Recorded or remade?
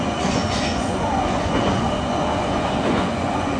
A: remade